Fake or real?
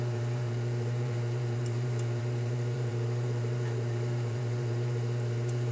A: fake